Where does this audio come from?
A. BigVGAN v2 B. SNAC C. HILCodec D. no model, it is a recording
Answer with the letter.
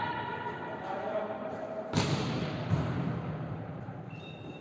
A